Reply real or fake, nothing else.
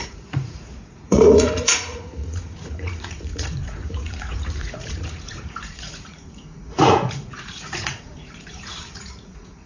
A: fake